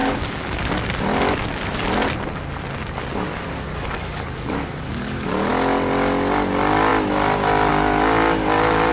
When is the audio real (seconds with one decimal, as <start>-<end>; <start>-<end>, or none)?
0.7-3.3; 5.5-8.9